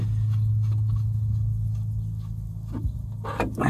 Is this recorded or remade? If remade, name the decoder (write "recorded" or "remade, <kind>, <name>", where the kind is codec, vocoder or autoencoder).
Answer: recorded